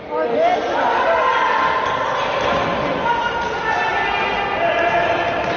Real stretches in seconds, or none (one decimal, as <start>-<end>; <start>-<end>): 0.0-3.9; 4.7-5.6